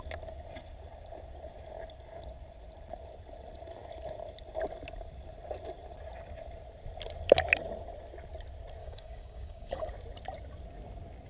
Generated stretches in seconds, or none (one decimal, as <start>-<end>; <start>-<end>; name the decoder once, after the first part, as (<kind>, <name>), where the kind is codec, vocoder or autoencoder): 8.8-9.9 (codec, DAC)

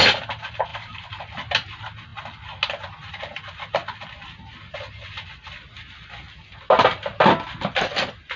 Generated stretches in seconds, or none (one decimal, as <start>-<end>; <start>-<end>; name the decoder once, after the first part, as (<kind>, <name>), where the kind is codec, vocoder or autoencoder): 0.7-1.3 (vocoder, BigVGAN v2)

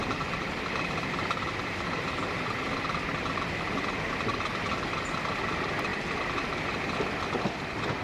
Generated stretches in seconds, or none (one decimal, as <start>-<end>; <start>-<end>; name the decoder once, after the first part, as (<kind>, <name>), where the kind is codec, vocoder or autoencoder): none

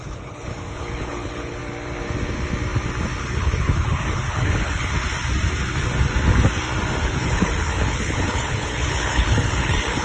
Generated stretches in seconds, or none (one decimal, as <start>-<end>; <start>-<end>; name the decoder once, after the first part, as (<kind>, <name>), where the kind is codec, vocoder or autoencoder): 0.0-1.6 (codec, HILCodec); 3.2-4.9; 7.0-10.0

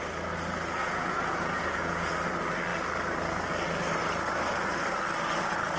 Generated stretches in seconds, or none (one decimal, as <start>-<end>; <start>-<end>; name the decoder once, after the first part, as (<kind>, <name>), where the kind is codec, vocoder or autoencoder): 0.8-2.1 (vocoder, Vocos)

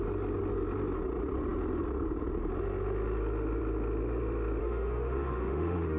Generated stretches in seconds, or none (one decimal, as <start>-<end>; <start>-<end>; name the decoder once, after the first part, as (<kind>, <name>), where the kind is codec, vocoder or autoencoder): 4.6-6.0 (autoencoder, DAC-VAE)

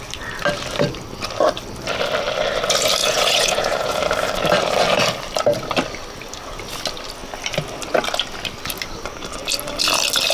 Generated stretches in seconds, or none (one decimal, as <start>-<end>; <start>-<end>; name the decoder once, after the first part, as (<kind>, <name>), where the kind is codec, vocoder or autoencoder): 3.0-4.0 (vocoder, Vocos)

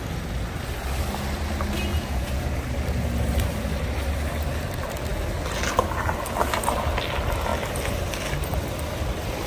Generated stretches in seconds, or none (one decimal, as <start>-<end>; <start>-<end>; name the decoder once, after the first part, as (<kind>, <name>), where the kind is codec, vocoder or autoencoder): 1.9-2.5 (vocoder, Vocos)